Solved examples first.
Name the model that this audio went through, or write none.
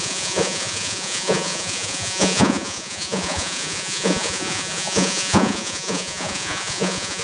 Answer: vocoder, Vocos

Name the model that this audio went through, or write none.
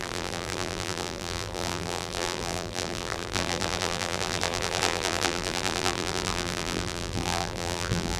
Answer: vocoder, BigVGAN v2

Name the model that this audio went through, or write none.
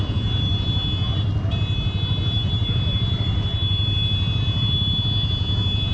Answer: none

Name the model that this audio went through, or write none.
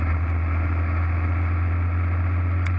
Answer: none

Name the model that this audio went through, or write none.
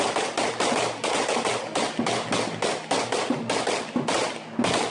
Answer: none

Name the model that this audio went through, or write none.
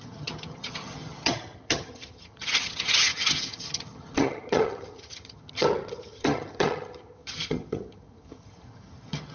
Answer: vocoder, HiFi-GAN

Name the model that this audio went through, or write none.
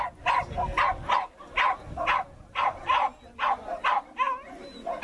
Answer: none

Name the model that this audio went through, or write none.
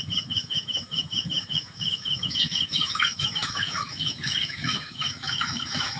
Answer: autoencoder, DAC-VAE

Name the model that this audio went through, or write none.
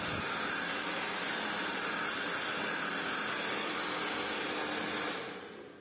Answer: none